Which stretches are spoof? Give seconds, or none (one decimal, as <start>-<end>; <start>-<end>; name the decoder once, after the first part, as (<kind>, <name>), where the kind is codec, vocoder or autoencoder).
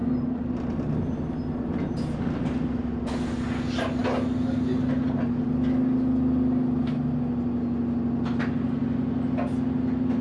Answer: none